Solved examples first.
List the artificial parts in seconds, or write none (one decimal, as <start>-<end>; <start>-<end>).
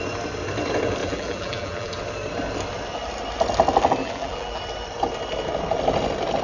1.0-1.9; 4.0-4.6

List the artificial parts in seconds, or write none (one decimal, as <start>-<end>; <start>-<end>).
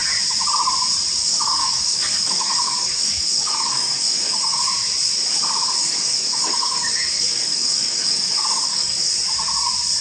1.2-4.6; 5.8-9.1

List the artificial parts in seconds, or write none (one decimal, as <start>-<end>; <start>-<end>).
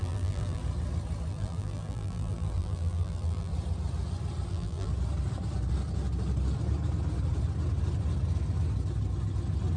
0.0-0.6; 1.3-3.5; 4.5-4.9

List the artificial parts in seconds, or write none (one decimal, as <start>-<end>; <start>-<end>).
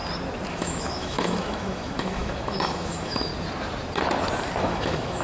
0.5-3.3; 4.6-5.2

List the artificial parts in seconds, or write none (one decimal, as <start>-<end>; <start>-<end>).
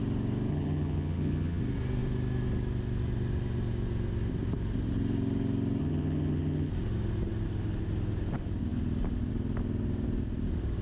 0.5-1.6; 5.8-6.7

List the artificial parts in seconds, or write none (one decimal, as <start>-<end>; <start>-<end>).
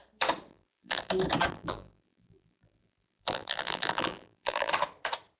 0.5-1.1; 1.5-4.7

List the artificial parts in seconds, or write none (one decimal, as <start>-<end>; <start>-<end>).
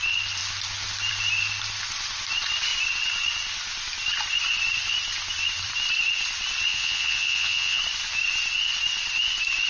6.7-7.8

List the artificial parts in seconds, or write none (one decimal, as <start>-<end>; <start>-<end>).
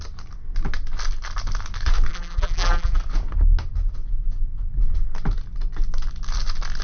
2.1-3.0